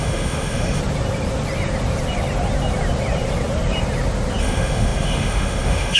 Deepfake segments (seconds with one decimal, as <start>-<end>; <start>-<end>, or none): 0.0-0.8; 4.4-6.0